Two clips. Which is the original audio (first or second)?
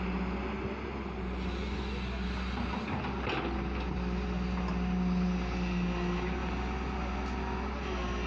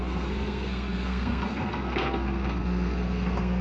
first